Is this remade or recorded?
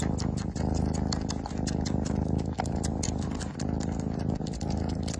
recorded